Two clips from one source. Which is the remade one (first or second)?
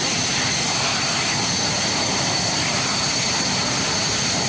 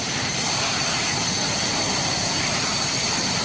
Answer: second